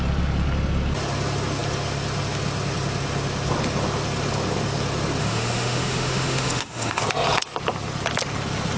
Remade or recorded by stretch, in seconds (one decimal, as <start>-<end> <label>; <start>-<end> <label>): 0.0-5.2 recorded; 5.2-7.0 remade; 7.0-8.8 recorded